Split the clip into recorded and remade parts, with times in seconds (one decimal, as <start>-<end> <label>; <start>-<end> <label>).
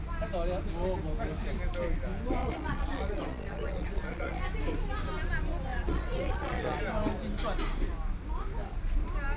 0.0-2.4 recorded; 2.4-4.4 remade; 4.4-5.7 recorded; 5.7-6.8 remade; 6.8-9.4 recorded